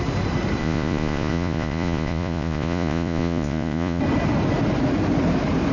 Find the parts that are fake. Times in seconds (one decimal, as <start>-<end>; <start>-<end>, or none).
0.6-4.0